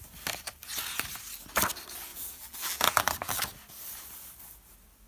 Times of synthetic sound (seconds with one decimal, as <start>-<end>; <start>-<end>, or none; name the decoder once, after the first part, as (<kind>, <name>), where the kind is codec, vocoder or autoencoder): 2.1-3.4 (vocoder, BigVGAN v2)